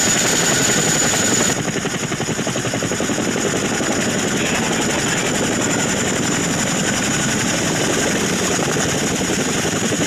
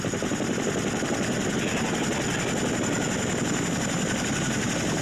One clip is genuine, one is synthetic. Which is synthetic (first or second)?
first